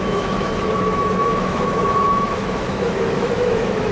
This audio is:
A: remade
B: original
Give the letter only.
A